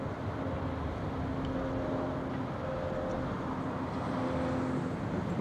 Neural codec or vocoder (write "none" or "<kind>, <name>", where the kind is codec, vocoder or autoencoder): none